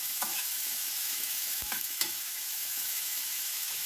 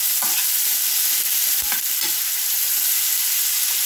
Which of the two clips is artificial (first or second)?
first